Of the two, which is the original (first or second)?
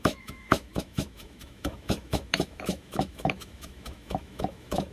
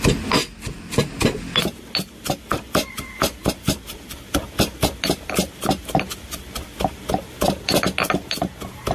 second